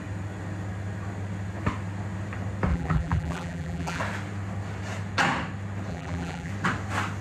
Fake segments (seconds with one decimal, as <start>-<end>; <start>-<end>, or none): 2.7-4.0; 5.9-6.5